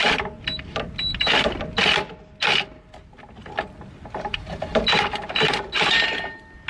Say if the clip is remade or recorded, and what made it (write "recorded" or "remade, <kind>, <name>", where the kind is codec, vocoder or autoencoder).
recorded